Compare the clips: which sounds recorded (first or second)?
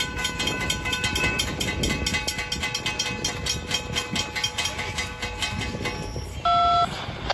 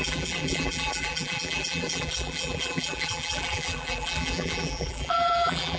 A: first